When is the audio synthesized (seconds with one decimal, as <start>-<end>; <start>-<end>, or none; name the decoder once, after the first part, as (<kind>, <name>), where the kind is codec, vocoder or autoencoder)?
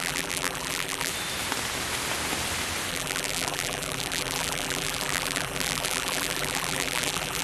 0.0-1.1 (vocoder, BigVGAN v2); 2.9-7.4